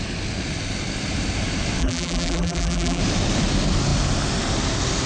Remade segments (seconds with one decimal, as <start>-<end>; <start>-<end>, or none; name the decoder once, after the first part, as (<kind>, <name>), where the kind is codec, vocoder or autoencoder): 1.8-3.0 (vocoder, BigVGAN v2)